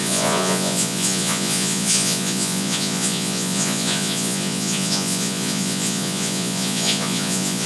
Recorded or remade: remade